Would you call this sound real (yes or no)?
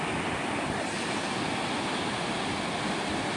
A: yes